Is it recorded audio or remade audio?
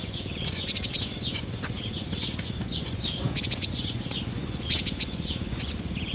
remade